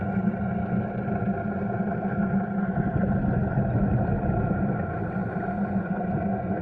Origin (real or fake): real